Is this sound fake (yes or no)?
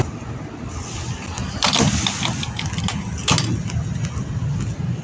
no